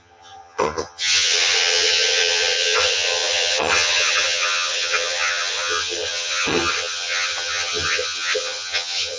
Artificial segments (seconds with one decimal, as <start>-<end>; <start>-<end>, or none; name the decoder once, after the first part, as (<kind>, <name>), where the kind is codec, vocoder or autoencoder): 0.0-9.2 (vocoder, HiFi-GAN)